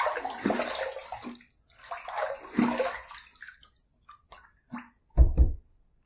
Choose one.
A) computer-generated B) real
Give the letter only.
B